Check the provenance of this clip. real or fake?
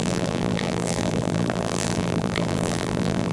fake